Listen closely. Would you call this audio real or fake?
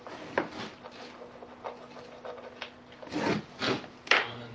real